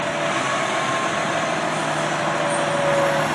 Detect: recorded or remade recorded